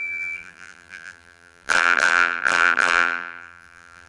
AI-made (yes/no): yes